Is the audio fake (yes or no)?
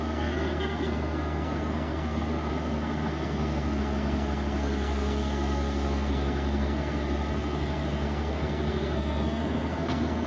yes